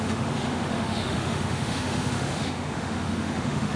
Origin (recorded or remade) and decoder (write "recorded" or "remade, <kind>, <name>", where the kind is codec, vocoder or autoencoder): remade, autoencoder, DAC-VAE